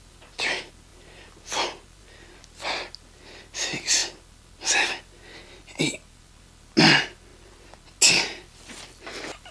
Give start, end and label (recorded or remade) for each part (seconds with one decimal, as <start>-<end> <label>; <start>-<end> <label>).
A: 0.0-9.5 recorded